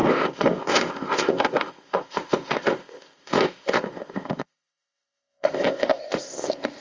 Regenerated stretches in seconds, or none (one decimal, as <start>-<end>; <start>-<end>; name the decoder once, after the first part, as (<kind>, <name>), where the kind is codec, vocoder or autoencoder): 0.0-6.8 (codec, ZipCodec)